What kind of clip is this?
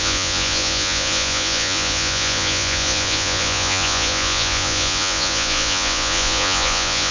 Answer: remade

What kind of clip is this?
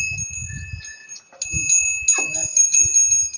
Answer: recorded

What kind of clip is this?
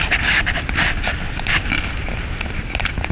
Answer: recorded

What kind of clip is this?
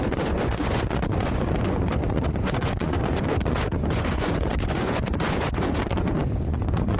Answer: remade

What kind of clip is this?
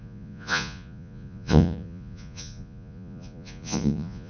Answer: remade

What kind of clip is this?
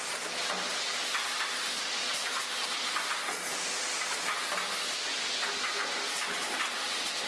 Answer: recorded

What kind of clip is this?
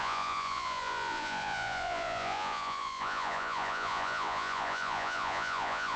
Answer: remade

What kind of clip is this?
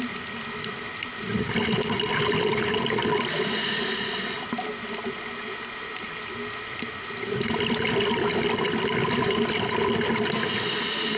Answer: recorded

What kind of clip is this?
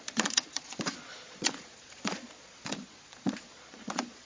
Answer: remade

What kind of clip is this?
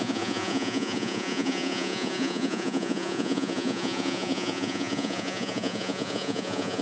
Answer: remade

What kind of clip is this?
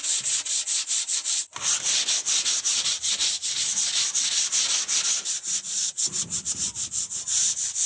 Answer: recorded